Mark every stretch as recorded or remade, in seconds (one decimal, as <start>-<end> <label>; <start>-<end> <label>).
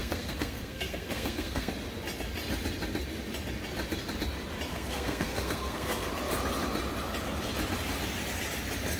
0.0-1.7 remade; 1.7-4.7 recorded; 4.7-6.1 remade; 6.1-9.0 recorded